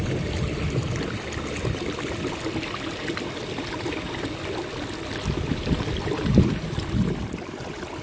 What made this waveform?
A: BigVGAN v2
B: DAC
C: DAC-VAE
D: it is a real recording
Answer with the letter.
D